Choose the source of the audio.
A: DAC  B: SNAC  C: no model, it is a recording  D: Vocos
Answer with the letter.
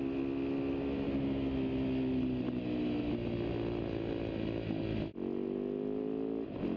C